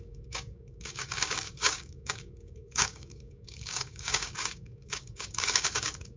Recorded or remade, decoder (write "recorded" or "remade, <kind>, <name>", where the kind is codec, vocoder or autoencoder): remade, codec, DAC